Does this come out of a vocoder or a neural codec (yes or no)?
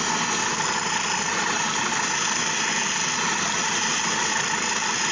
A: no